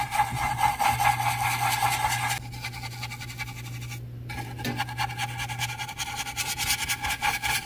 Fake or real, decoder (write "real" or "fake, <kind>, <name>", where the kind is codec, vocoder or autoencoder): real